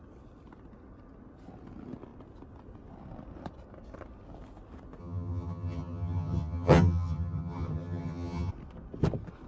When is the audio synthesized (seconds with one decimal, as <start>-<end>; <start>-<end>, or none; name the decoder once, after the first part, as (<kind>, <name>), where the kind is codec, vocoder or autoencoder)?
5.0-8.5 (vocoder, HiFi-GAN)